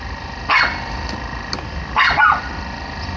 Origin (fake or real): real